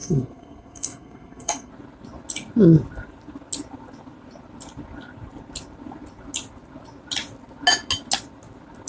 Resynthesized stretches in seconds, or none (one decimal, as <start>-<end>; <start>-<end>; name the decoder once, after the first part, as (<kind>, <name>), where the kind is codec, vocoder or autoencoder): 0.0-1.7 (codec, SNAC)